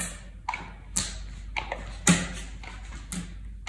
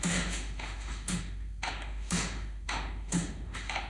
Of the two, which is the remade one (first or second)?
second